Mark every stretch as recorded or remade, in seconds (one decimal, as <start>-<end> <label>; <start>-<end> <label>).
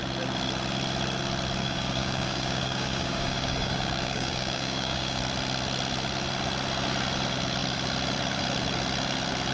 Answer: 0.0-1.6 recorded; 1.6-5.2 remade; 5.2-9.5 recorded